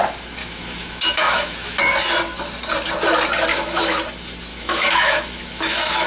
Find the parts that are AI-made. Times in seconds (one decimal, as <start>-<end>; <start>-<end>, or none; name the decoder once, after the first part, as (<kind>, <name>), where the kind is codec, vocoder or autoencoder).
0.4-1.8 (autoencoder, DAC-VAE); 3.5-4.0; 4.5-6.1